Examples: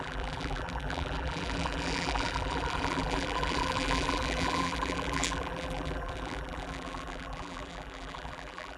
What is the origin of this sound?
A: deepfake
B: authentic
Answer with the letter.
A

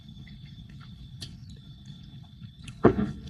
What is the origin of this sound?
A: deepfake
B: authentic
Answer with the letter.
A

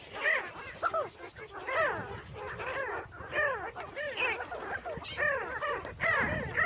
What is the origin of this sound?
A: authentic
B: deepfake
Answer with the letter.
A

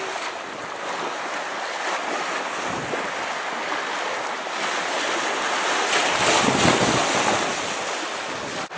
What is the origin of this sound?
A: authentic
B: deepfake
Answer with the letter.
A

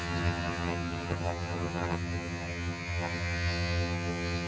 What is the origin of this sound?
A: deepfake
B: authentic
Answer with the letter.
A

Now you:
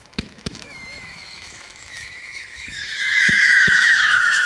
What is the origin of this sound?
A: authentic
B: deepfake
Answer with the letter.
B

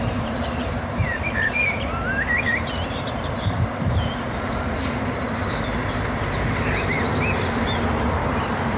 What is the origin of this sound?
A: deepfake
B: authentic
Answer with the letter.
A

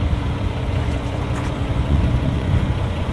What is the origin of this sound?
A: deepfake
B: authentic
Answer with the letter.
A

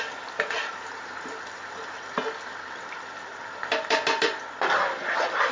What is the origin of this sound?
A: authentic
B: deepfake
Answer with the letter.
B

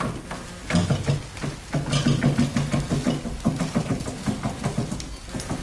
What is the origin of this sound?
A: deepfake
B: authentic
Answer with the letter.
B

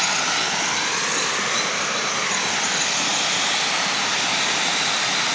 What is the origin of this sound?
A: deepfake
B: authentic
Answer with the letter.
B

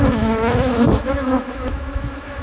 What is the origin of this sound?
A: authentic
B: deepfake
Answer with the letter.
B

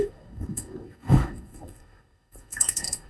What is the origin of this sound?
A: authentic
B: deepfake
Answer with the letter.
B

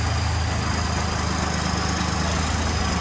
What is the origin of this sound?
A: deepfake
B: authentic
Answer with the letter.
B